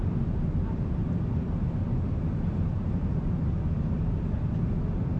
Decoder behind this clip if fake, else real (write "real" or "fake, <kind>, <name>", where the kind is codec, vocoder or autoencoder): real